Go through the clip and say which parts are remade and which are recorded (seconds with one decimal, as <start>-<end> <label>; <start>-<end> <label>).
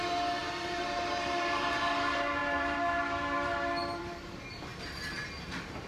0.0-4.7 remade; 4.7-5.4 recorded; 5.4-5.9 remade